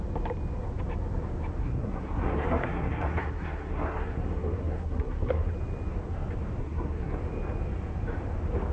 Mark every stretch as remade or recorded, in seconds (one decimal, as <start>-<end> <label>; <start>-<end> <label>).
0.0-1.6 recorded; 1.6-5.5 remade; 5.5-6.6 recorded; 6.6-7.2 remade; 7.2-8.7 recorded